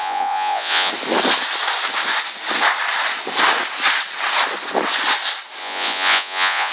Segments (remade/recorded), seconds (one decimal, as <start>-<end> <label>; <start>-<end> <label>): 0.0-0.9 remade; 0.9-5.6 recorded; 5.6-6.7 remade